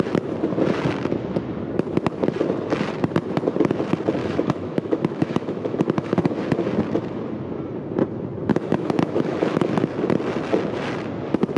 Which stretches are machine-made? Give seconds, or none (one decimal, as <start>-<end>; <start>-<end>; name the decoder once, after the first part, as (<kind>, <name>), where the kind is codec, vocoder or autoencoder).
4.2-6.3 (autoencoder, DAC-VAE); 8.5-9.7